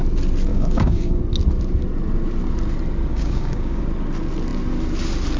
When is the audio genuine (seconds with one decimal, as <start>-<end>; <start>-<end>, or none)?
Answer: 0.0-0.5; 1.2-3.1; 3.8-5.4